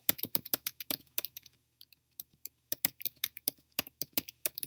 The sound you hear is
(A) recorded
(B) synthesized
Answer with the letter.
B